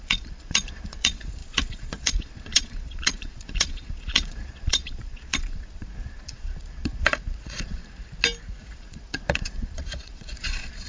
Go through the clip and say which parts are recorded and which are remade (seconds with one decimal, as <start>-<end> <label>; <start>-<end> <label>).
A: 0.0-7.8 remade; 7.8-8.6 recorded; 8.6-10.9 remade